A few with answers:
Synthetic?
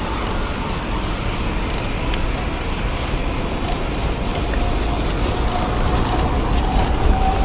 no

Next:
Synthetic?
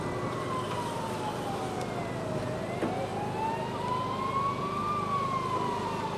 no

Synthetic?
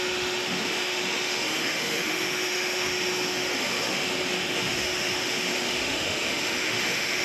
yes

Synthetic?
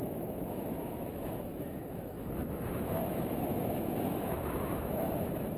yes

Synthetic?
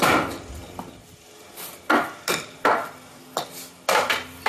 no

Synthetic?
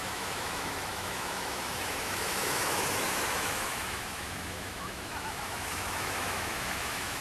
yes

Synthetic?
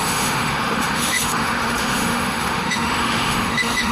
yes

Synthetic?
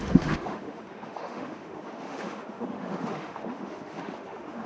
yes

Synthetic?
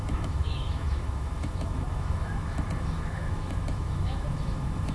yes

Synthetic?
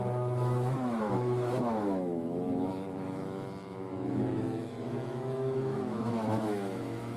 yes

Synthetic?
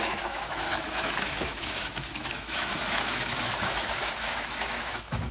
yes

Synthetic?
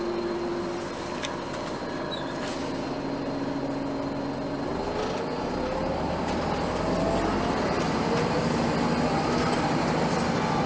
no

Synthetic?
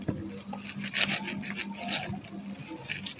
no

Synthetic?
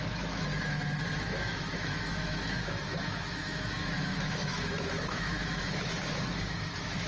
yes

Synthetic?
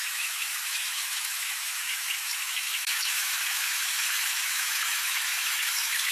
yes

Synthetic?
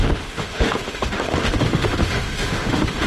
yes